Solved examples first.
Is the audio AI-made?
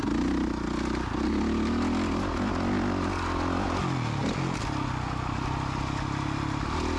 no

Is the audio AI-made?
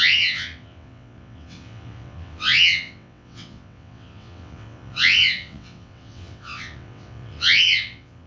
yes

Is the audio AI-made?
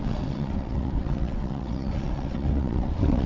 yes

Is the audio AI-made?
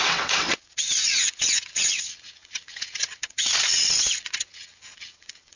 yes